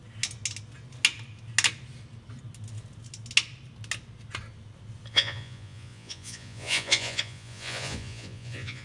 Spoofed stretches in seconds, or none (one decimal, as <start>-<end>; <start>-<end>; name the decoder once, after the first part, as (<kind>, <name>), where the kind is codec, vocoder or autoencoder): 5.1-8.8 (vocoder, Vocos)